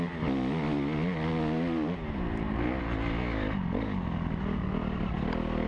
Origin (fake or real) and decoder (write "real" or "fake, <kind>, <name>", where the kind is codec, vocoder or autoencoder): real